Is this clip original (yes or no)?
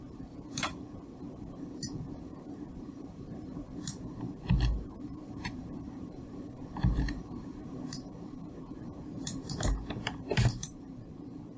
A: no